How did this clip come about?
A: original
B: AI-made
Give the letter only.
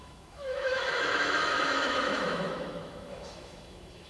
B